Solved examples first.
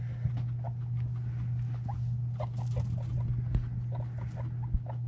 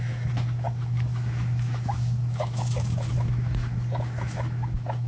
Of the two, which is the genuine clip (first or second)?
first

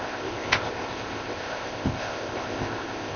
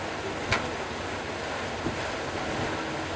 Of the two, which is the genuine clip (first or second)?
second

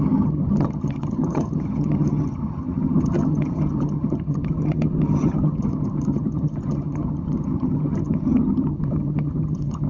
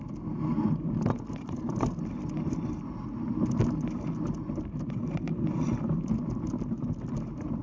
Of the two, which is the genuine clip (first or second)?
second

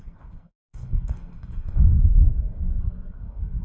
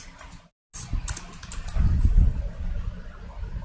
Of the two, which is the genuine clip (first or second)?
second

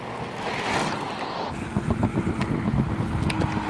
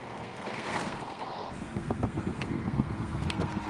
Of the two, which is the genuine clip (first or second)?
first